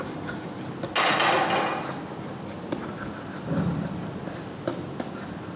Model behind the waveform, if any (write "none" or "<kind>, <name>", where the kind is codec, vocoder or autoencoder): none